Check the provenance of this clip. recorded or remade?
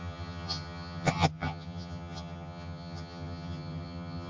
remade